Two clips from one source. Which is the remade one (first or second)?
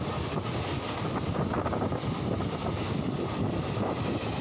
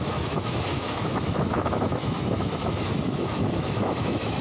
second